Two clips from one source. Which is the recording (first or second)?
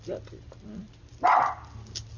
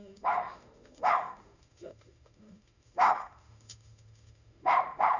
first